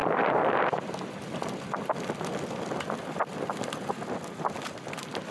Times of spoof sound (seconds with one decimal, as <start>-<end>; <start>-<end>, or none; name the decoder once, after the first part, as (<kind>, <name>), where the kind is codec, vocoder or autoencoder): none